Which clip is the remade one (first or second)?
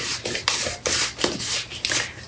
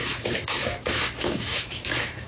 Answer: second